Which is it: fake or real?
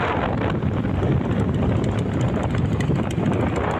real